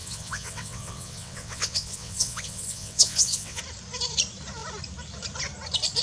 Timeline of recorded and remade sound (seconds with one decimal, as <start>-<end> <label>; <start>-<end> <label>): 0.0-3.6 remade; 3.6-6.0 recorded